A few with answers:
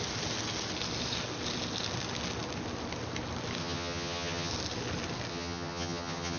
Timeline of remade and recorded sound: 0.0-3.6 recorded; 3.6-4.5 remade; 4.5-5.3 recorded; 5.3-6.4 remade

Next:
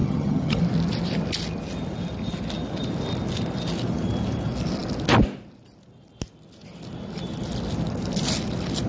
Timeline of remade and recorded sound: 0.0-0.6 remade; 0.6-8.9 recorded